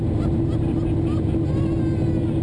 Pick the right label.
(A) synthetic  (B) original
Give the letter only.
B